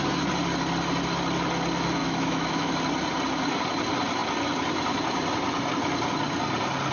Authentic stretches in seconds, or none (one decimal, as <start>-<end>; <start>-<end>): 0.0-2.0; 2.7-6.9